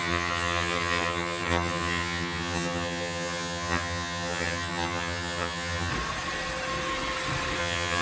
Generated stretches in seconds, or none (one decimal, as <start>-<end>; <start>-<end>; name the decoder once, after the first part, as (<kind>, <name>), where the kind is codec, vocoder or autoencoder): 0.0-5.9 (vocoder, HiFi-GAN); 7.6-8.0